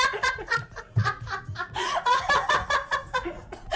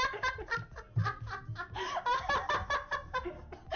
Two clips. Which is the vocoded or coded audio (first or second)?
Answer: first